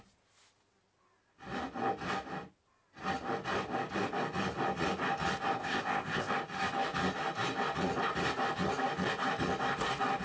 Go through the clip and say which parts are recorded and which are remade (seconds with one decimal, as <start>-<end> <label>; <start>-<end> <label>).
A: 0.0-5.6 recorded; 5.6-6.3 remade; 6.3-10.2 recorded